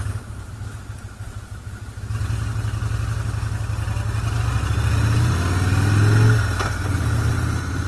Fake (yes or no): no